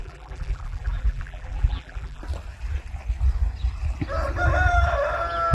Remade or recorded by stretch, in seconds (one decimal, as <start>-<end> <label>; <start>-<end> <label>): 0.0-2.2 remade; 2.2-5.5 recorded